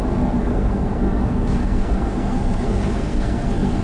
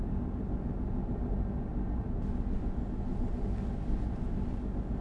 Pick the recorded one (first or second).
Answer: second